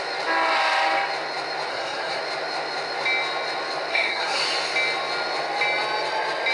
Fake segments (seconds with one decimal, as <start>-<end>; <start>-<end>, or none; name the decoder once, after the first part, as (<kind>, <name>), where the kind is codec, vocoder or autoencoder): 1.7-2.2 (codec, SNAC); 3.9-4.4